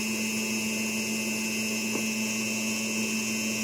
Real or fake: real